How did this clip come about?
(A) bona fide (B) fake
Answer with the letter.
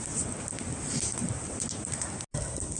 A